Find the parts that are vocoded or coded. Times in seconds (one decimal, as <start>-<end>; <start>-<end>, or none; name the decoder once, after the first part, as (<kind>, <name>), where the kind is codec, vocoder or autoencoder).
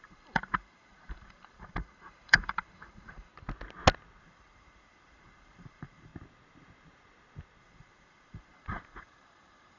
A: 0.0-3.3 (vocoder, BigVGAN v2); 4.2-6.1; 7.6-9.8